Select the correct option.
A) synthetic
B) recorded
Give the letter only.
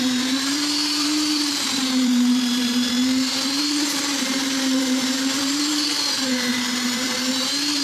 A